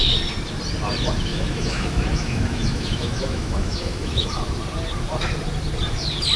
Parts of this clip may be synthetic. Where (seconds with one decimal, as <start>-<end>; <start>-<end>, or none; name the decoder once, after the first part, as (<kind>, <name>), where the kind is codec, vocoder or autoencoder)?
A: 1.3-4.4 (autoencoder, DAC-VAE)